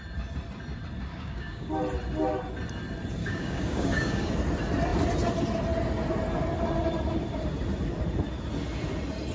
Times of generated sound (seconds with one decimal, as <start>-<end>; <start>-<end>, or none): 1.1-1.7; 3.2-4.3